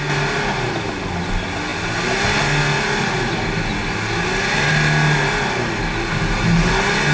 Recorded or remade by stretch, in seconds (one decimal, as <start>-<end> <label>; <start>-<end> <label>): 0.0-7.1 recorded